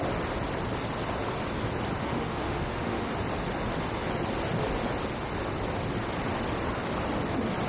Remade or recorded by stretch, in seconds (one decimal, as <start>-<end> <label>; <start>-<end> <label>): 0.0-2.0 recorded; 2.0-3.1 remade; 3.1-7.7 recorded